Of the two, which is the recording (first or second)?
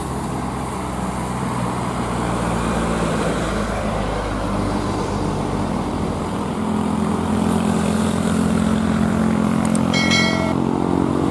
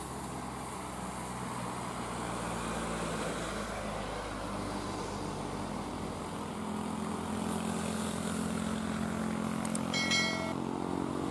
second